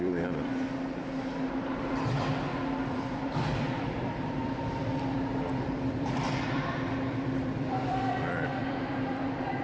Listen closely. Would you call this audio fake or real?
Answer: fake